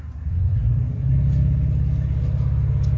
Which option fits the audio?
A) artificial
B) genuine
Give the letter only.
B